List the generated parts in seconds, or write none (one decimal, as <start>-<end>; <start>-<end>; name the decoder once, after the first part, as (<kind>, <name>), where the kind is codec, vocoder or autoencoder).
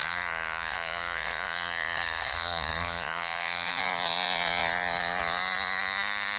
0.0-3.8 (codec, SNAC)